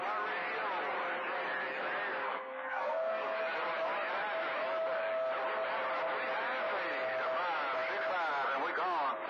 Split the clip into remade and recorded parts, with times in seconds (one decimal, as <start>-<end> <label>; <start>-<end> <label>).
0.0-2.2 recorded; 2.2-3.4 remade; 3.4-9.3 recorded